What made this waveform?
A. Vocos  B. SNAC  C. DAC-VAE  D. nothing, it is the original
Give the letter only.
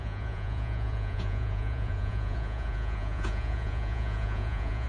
A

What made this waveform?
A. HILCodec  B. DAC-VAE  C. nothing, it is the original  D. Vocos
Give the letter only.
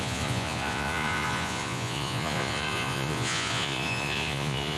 D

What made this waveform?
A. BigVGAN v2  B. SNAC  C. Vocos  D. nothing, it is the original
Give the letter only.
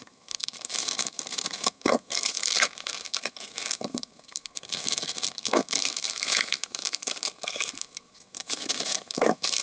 B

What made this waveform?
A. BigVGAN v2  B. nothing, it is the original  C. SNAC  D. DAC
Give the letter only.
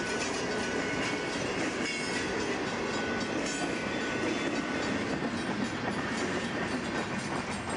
B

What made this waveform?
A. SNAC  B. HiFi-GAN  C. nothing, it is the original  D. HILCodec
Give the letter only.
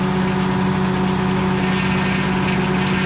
C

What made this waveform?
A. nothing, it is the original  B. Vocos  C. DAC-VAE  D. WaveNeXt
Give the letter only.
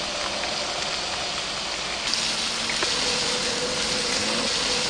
A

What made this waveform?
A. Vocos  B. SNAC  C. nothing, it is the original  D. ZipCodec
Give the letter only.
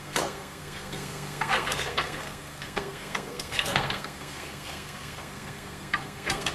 B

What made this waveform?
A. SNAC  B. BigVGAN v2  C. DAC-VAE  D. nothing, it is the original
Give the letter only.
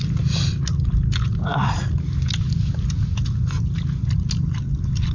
D